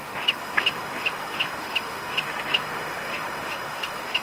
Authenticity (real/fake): fake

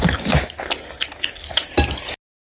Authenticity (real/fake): real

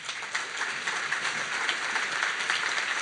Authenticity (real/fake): real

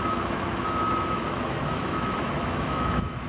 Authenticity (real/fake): fake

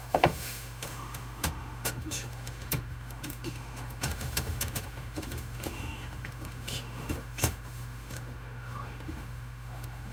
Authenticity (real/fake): fake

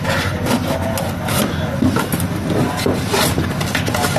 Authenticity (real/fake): real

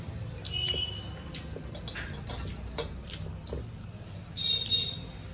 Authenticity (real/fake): real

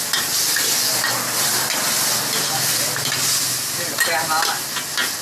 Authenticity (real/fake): real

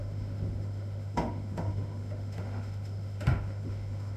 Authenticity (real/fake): fake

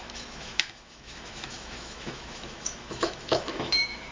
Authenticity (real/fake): fake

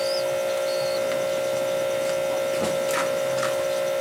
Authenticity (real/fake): real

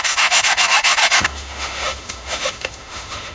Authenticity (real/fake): fake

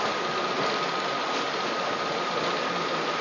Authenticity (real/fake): real